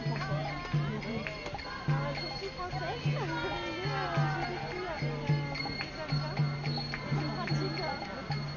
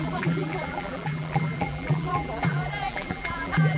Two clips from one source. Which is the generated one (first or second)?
second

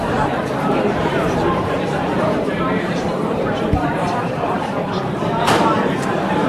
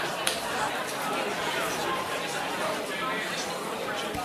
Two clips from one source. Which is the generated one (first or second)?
first